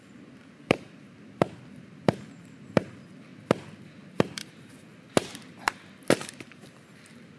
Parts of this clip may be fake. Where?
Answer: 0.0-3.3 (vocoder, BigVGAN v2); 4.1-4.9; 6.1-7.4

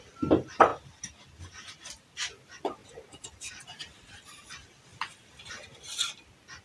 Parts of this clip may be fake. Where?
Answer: 0.7-2.3 (vocoder, BigVGAN v2); 2.8-4.5; 4.9-5.5

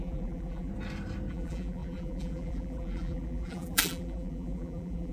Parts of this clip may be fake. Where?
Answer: 0.0-0.7 (vocoder, BigVGAN v2); 1.3-5.1

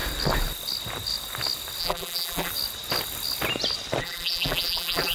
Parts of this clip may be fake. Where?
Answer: 1.8-2.5 (vocoder, BigVGAN v2); 4.0-5.1

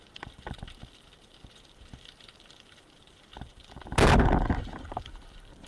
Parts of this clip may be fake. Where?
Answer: 0.0-3.3 (vocoder, BigVGAN v2); 4.9-5.7

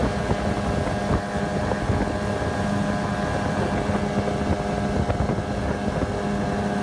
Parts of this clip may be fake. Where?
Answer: none

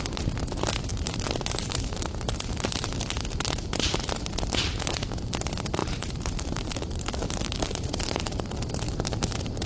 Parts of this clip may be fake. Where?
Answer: 0.9-2.0 (vocoder, BigVGAN v2); 5.8-8.5